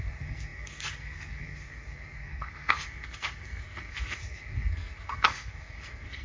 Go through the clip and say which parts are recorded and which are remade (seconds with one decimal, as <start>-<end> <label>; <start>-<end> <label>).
0.0-6.2 remade